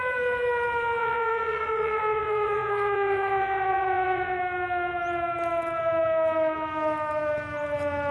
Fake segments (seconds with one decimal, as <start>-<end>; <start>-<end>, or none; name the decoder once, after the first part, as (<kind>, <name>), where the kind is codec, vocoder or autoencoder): 1.0-4.4 (vocoder, WaveNeXt)